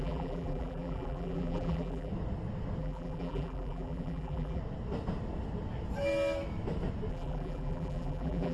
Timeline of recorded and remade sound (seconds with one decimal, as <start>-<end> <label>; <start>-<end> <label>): 0.0-2.1 remade; 2.1-2.8 recorded; 2.8-4.6 remade; 4.6-7.1 recorded; 7.1-8.5 remade